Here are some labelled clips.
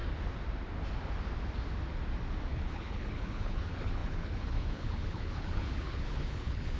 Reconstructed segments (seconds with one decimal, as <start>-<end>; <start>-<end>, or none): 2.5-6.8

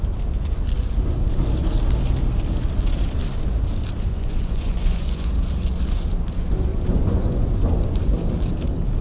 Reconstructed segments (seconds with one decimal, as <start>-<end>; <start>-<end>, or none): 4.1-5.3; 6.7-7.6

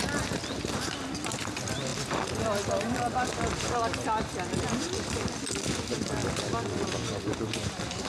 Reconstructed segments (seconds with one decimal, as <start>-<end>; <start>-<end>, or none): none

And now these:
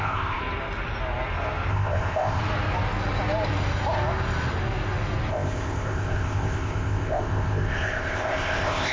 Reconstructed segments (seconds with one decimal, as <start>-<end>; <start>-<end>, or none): 0.0-0.4; 1.7-2.4; 5.3-8.9